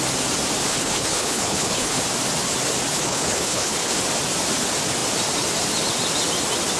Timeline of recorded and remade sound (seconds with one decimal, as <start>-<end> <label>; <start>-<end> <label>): 0.0-0.7 recorded; 0.7-2.0 remade; 2.0-2.9 recorded; 2.9-4.0 remade; 4.0-6.8 recorded